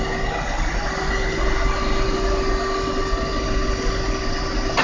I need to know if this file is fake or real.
real